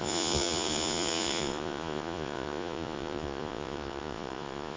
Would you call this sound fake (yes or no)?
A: yes